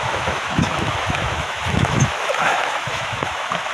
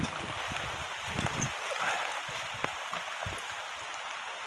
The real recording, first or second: second